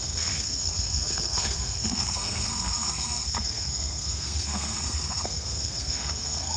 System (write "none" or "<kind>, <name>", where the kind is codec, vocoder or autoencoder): codec, SNAC